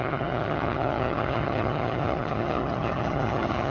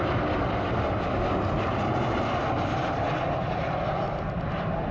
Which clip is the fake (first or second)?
first